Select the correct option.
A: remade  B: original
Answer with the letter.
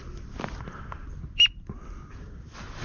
B